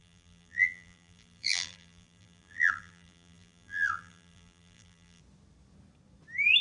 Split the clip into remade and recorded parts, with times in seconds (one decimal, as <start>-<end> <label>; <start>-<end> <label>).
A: 0.0-5.2 remade; 5.2-6.6 recorded